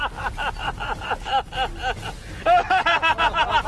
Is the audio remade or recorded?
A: recorded